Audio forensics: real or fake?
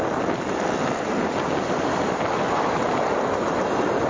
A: real